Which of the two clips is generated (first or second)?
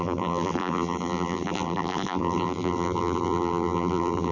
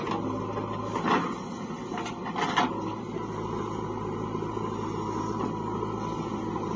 first